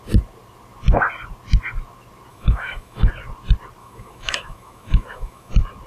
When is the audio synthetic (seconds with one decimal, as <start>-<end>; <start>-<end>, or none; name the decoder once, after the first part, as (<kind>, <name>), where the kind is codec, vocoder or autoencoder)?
2.3-3.1 (autoencoder, DAC-VAE); 3.8-5.5